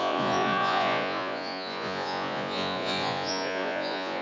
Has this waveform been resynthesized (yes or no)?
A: yes